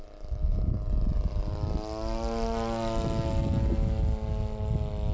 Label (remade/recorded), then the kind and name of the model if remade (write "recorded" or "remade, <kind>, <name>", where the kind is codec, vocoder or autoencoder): recorded